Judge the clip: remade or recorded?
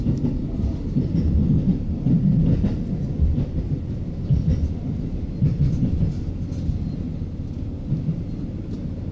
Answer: recorded